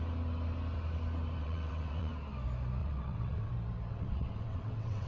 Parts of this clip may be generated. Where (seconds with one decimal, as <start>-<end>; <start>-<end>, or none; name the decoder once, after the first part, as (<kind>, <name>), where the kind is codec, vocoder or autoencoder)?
1.4-2.1 (vocoder, WaveNeXt); 2.8-3.5; 3.9-5.1